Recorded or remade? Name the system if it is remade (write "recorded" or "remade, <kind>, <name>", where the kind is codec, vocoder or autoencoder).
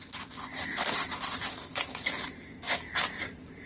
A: recorded